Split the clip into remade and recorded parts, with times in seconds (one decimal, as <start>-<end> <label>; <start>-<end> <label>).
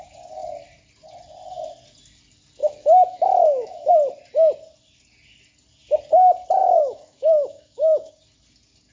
0.0-2.6 recorded; 2.6-3.9 remade; 3.9-6.6 recorded; 6.6-8.1 remade; 8.1-8.9 recorded